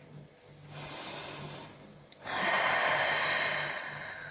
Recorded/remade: recorded